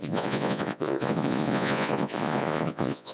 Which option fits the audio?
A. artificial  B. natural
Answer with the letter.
A